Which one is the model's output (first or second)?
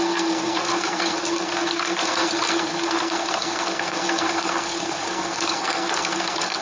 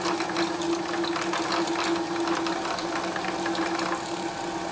first